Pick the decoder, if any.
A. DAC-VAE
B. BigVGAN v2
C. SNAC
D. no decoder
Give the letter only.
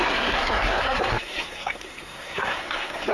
C